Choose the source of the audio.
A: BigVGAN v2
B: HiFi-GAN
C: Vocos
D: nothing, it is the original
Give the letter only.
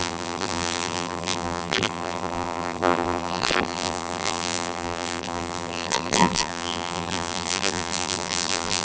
A